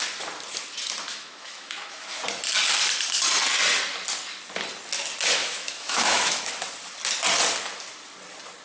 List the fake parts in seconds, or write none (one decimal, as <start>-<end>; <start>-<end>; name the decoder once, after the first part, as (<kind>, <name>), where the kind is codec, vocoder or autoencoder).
1.1-2.2 (autoencoder, DAC-VAE); 5.4-6.5